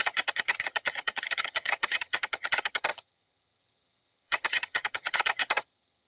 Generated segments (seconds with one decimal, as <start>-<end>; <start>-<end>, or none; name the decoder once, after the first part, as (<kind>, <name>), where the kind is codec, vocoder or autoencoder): 0.0-6.1 (vocoder, HiFi-GAN)